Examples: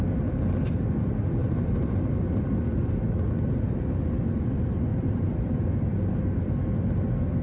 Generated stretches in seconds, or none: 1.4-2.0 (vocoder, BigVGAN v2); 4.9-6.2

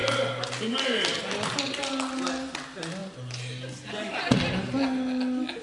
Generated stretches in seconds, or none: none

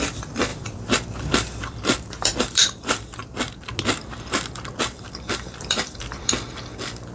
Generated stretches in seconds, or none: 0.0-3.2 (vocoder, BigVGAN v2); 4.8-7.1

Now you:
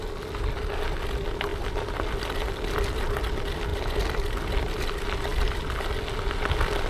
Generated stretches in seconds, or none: 1.5-2.0 (vocoder, BigVGAN v2)